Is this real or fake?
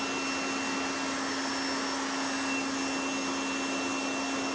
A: real